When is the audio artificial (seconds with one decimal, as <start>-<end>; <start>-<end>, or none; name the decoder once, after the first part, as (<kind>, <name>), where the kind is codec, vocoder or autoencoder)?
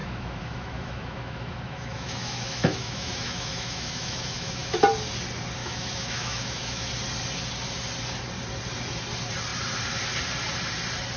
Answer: 0.0-4.8 (autoencoder, DAC-VAE); 5.6-6.9